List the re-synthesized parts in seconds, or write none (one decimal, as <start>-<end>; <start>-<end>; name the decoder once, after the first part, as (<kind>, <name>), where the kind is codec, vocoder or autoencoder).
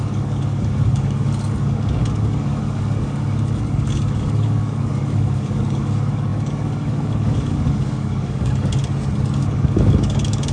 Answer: 0.0-8.8 (codec, DAC); 9.4-10.5